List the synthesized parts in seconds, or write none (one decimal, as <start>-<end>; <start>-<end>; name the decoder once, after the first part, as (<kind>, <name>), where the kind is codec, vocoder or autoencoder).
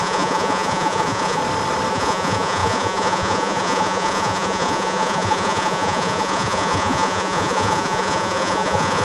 0.0-1.4 (vocoder, Vocos); 1.9-9.0